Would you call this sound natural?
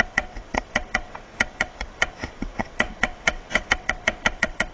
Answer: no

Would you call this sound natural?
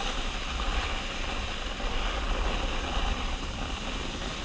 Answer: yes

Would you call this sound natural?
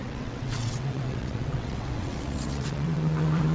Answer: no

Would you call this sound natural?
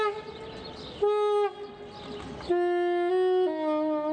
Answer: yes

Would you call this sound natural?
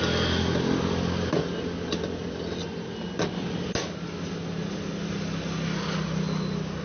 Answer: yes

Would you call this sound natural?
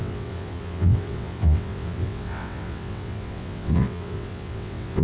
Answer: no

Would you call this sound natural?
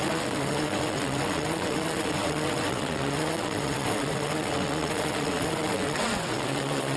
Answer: no